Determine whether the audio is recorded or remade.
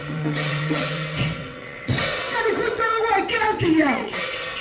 remade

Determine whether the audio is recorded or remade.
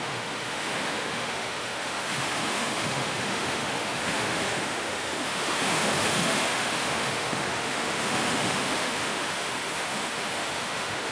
remade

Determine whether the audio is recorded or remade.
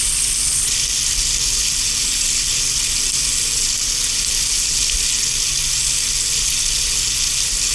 recorded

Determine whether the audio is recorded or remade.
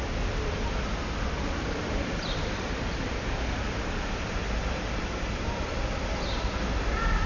recorded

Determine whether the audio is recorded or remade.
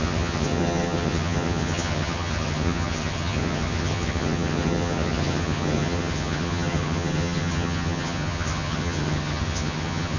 remade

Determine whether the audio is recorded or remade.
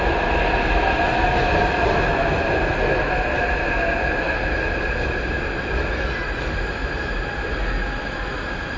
recorded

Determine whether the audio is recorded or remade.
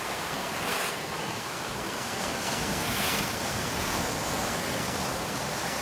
remade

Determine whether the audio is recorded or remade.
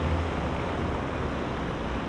recorded